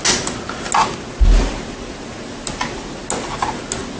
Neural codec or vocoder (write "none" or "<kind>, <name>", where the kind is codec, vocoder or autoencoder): none